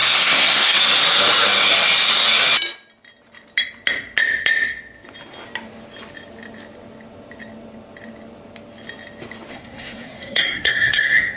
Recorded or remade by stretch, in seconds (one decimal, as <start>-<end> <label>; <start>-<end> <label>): 0.0-0.8 remade; 0.8-9.5 recorded; 9.5-11.4 remade